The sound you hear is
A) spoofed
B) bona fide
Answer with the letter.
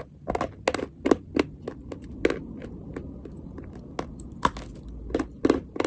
B